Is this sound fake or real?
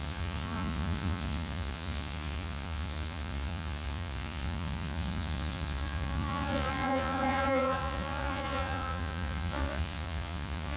fake